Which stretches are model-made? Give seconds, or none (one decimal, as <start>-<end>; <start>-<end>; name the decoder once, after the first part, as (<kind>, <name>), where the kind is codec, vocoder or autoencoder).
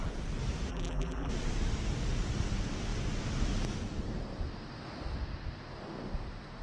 0.7-1.3 (vocoder, BigVGAN v2)